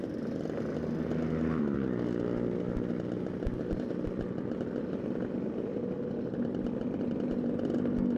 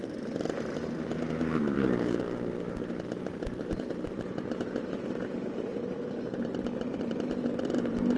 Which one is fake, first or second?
second